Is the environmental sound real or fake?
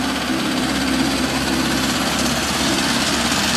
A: real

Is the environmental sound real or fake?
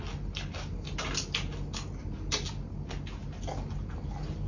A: real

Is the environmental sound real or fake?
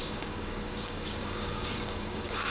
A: fake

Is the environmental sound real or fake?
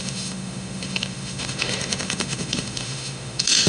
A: fake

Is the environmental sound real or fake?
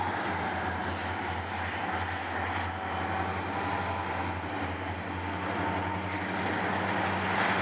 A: real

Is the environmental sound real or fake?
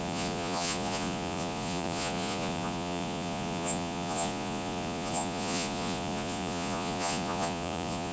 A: fake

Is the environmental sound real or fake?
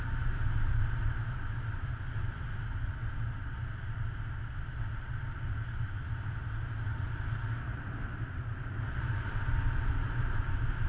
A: real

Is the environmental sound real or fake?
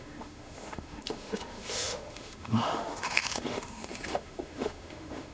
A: fake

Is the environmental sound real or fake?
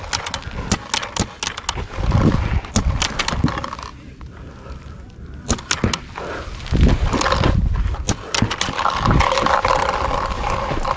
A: real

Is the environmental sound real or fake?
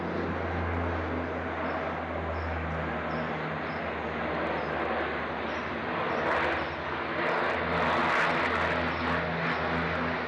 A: real